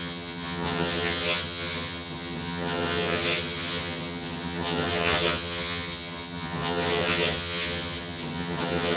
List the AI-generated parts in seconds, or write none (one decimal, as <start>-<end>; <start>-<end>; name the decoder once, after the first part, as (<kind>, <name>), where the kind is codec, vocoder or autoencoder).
0.0-9.0 (vocoder, HiFi-GAN)

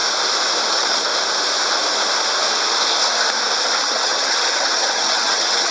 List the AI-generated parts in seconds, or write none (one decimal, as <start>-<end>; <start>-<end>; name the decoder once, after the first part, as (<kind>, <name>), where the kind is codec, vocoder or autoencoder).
0.7-1.1 (vocoder, HiFi-GAN); 3.8-5.7

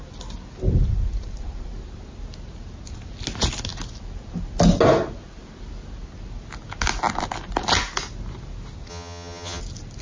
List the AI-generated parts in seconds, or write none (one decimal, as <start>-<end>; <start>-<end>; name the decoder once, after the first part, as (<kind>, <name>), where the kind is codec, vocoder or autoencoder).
8.9-9.6 (vocoder, HiFi-GAN)

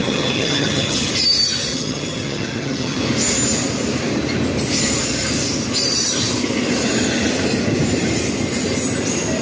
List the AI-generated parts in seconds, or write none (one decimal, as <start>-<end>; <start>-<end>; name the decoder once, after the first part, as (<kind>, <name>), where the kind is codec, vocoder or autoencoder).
0.0-1.1 (vocoder, HiFi-GAN); 1.7-3.0

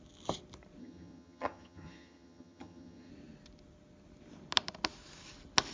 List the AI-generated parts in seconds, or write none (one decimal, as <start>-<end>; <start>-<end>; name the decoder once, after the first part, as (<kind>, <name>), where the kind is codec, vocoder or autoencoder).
0.8-3.1 (vocoder, HiFi-GAN)

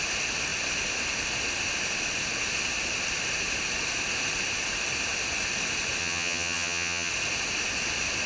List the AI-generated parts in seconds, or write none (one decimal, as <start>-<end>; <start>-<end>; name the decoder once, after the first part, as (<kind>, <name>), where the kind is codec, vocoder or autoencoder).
6.0-7.1 (vocoder, HiFi-GAN)